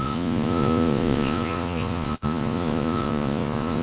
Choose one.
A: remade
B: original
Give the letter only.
A